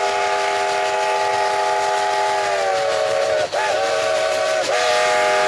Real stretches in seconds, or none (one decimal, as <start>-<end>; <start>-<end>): 0.0-2.7; 4.9-5.5